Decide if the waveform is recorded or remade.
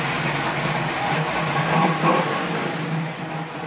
recorded